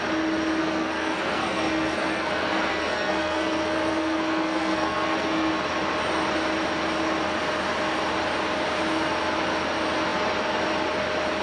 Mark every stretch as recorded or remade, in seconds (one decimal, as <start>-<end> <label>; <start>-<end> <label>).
0.0-0.6 recorded; 0.6-5.5 remade; 5.5-11.4 recorded